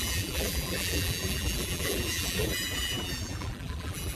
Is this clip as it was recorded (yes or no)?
no